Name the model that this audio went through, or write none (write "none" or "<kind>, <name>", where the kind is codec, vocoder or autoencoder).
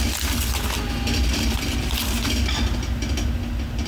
none